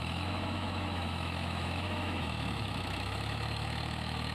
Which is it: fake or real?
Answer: fake